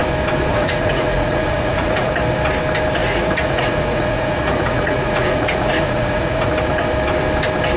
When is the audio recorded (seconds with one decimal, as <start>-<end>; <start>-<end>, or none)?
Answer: 0.0-0.5; 2.1-3.0; 6.5-7.8